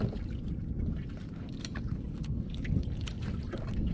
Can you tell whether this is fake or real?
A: real